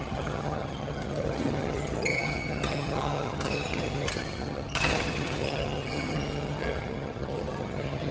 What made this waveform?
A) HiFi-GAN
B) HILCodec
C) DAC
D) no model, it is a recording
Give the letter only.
A